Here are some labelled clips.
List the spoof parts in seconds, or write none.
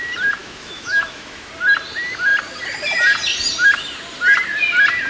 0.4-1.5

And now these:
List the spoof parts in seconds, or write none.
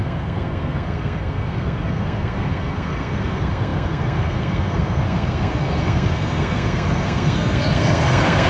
0.0-8.5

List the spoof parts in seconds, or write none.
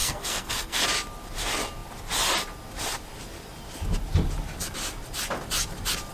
0.0-0.8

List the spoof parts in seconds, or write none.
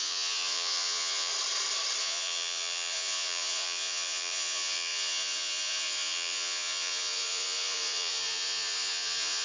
0.0-1.3; 2.0-9.4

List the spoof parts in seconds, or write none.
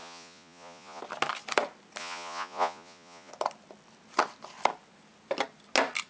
0.0-1.0; 2.0-3.3